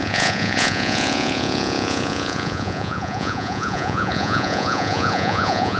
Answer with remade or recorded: remade